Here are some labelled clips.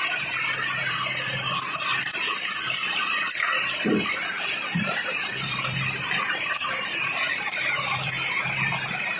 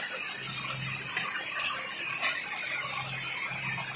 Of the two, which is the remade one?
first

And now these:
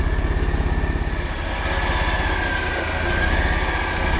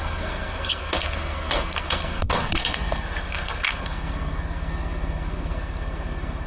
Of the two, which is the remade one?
second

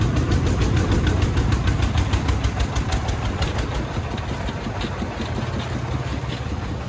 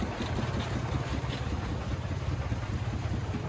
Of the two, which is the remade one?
second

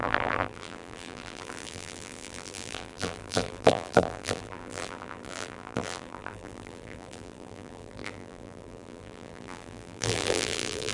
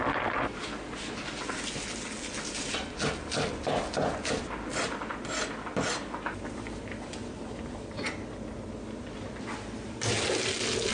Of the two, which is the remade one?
first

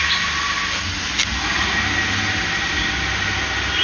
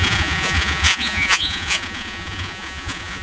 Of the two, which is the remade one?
second